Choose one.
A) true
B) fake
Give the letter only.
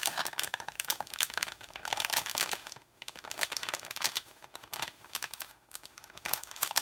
B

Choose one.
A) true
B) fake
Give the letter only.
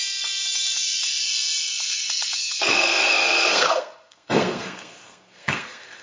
B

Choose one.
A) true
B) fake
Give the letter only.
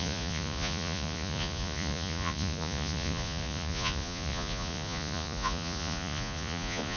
B